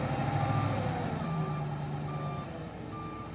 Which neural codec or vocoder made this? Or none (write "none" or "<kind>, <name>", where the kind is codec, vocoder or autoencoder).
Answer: none